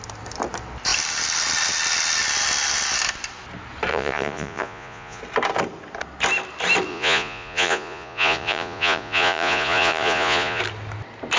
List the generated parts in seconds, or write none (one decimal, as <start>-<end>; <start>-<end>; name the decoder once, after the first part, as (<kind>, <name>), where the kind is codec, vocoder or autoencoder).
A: 3.9-5.2 (vocoder, Vocos); 6.9-10.6